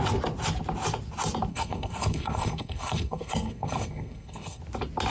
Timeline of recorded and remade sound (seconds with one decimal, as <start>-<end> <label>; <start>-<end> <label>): 0.0-1.5 recorded; 1.5-4.6 remade; 4.6-5.1 recorded